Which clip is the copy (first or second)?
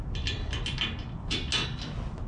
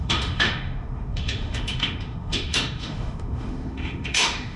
second